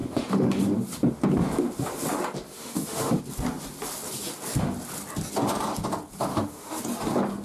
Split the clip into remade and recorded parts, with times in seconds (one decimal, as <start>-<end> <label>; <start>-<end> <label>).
0.0-0.6 remade; 0.6-2.5 recorded; 2.5-3.2 remade; 3.2-6.3 recorded; 6.3-6.8 remade; 6.8-7.4 recorded